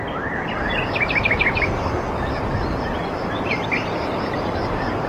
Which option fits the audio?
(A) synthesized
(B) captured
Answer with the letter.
B